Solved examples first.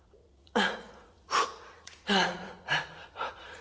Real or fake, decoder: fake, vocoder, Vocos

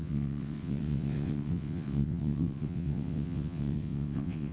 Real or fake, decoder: fake, vocoder, WaveNeXt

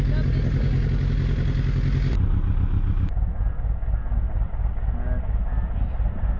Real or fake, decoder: real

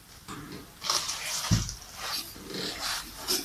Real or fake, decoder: real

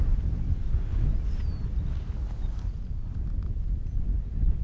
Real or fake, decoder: real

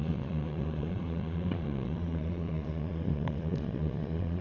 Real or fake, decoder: fake, vocoder, Vocos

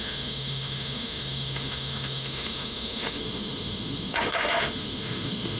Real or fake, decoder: fake, autoencoder, DAC-VAE